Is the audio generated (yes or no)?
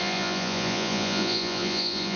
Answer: yes